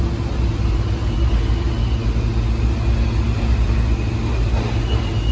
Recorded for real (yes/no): yes